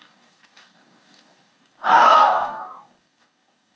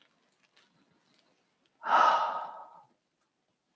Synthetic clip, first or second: first